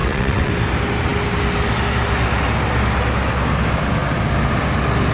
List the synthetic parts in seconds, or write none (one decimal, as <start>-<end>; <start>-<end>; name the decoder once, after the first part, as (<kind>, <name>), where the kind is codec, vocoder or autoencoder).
0.0-0.5 (vocoder, WaveNeXt)